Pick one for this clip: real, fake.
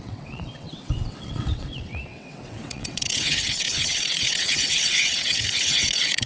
fake